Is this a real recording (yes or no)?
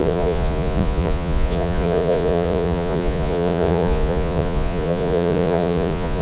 no